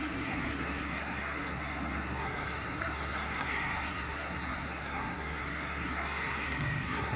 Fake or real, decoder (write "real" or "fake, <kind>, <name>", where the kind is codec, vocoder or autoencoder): fake, codec, SNAC